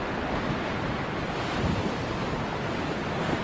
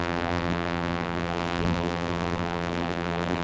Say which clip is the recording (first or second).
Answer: first